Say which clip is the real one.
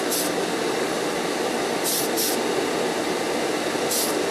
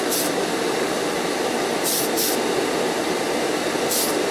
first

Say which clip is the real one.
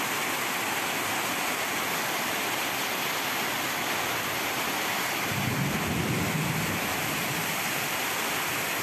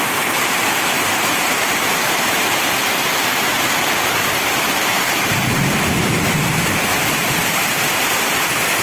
first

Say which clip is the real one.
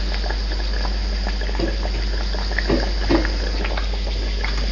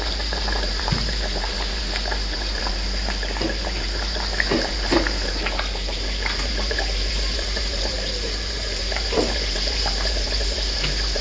first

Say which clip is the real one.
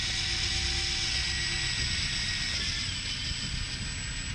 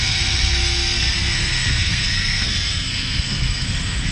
first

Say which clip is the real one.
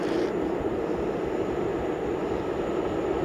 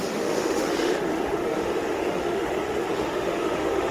first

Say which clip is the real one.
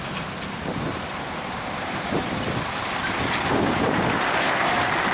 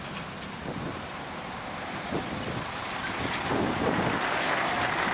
second